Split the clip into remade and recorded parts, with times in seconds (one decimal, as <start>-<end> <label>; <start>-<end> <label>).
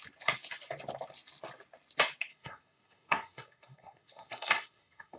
0.0-2.3 recorded; 2.3-5.2 remade